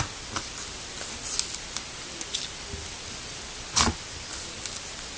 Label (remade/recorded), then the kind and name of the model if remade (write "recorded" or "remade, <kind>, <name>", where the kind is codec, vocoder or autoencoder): recorded